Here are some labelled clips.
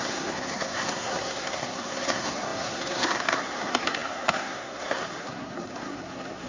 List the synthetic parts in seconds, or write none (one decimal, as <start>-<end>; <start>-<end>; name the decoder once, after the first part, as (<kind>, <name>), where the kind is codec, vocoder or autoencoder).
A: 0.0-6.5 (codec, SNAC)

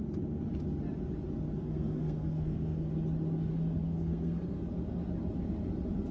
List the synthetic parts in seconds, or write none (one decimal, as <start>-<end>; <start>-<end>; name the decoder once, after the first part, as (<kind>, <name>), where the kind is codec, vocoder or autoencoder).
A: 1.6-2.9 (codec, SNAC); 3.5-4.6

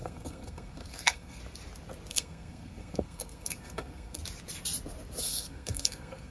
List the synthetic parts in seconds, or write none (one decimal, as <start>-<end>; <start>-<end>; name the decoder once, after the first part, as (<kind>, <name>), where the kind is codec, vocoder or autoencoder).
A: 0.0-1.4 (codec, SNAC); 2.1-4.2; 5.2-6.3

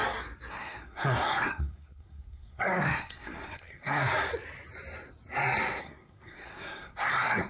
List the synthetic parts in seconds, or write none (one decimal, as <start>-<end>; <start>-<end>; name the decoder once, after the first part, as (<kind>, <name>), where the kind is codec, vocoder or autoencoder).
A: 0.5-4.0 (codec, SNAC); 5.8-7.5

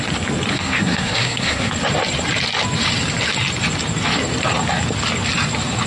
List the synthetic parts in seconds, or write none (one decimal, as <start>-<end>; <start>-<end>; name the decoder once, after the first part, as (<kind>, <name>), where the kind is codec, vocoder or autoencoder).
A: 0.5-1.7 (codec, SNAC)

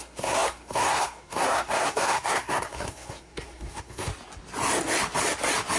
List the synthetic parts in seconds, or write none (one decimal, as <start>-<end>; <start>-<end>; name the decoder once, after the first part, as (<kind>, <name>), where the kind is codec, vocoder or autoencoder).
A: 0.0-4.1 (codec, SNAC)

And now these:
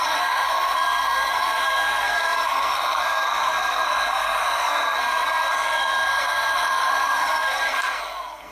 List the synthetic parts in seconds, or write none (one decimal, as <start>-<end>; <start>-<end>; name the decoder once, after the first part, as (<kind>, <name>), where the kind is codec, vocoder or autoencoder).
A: 0.0-8.5 (codec, SNAC)